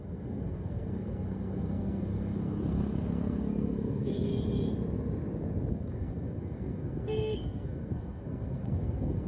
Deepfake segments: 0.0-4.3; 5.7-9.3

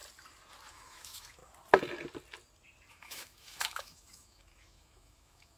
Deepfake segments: 0.7-1.4; 2.9-5.6

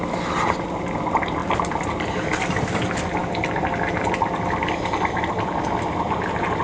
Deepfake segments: none

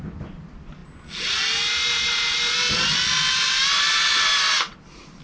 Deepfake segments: none

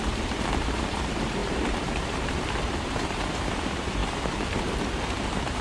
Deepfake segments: 0.0-5.6